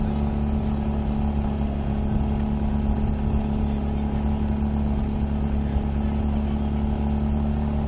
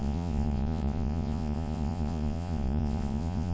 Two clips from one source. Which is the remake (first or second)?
second